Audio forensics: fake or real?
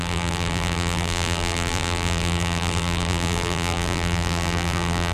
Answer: fake